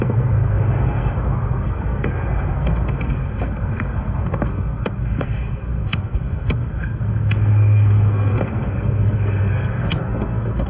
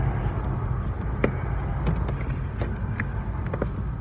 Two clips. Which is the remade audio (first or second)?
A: first